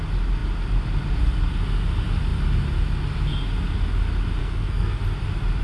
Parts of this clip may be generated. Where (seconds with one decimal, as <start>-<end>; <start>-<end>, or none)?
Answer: 4.4-5.0

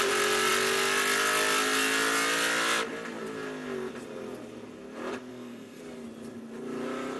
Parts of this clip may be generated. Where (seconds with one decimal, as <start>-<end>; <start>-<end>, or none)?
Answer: 5.3-5.8

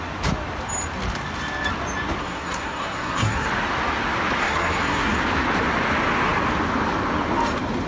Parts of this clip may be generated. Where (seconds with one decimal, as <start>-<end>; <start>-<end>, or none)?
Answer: 2.2-3.5; 4.4-5.2

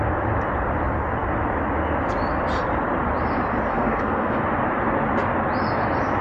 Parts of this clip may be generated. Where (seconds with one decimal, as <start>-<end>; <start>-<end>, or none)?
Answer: 3.7-4.4

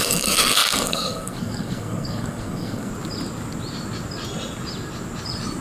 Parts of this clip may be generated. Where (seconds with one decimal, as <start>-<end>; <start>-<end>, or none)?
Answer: 0.0-2.9

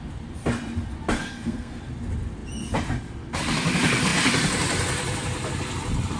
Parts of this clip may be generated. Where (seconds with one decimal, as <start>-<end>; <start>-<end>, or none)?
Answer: 1.2-1.8

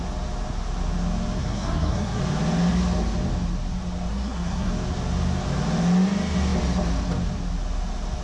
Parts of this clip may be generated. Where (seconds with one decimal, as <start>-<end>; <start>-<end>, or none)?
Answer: 1.4-2.2; 4.1-4.7

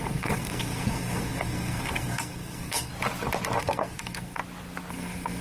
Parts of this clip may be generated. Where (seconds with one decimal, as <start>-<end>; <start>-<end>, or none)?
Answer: 0.0-2.9; 3.6-4.4; 4.9-5.4